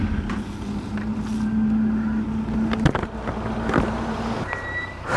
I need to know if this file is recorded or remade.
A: recorded